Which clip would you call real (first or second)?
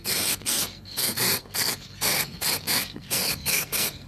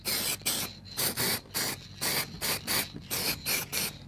second